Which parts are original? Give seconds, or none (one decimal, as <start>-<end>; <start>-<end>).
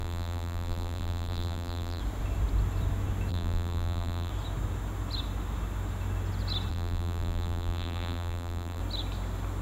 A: 2.0-3.3; 4.3-6.7; 8.8-9.6